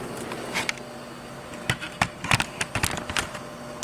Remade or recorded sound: recorded